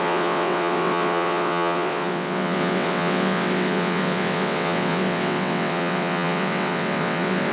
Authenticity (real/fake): fake